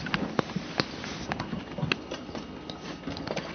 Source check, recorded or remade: recorded